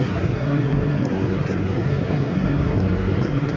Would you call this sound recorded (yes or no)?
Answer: no